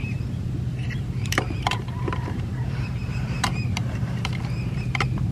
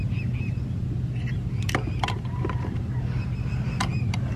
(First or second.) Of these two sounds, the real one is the second